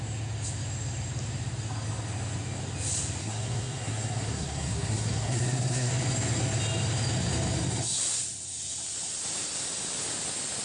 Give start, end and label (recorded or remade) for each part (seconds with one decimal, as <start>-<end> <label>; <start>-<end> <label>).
0.0-3.2 recorded; 3.2-5.9 remade; 5.9-10.6 recorded